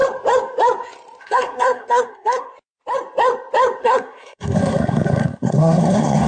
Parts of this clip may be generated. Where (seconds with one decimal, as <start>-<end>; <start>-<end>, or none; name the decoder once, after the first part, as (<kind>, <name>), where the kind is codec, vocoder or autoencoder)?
1.2-2.5 (codec, SNAC); 3.8-6.3